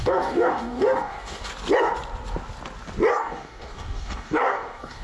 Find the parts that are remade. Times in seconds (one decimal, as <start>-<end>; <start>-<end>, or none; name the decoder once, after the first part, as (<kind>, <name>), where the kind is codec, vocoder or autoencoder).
0.0-1.5 (codec, DAC); 3.1-5.0